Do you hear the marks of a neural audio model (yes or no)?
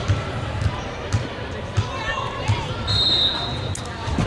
no